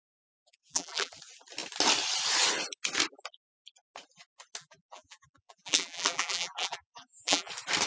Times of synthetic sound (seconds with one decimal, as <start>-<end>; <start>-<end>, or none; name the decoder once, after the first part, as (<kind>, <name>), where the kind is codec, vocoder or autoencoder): 0.0-1.1 (vocoder, BigVGAN v2); 4.6-7.5